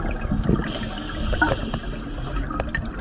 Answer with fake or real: real